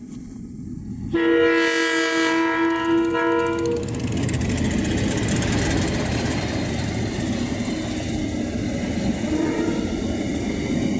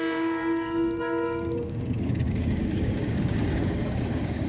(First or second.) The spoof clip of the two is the second